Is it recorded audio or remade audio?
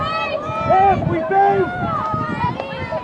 recorded